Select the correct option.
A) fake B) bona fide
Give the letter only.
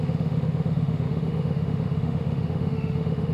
A